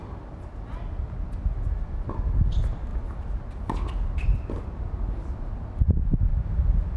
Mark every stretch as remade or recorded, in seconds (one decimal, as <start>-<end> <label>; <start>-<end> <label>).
0.0-6.3 recorded; 6.3-7.0 remade